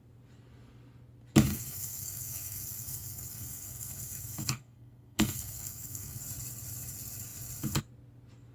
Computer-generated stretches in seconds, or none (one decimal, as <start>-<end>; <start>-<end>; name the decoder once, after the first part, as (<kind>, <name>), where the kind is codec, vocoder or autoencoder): 1.5-6.2 (codec, SNAC)